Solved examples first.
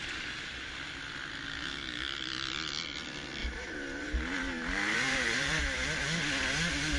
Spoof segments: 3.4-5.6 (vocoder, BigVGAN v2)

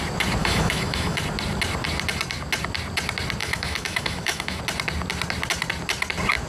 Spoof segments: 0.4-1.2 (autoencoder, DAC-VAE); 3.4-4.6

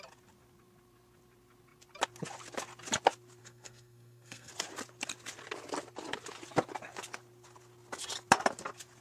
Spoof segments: 3.4-4.5 (codec, SNAC)